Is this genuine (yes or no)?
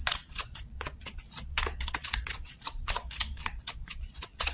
no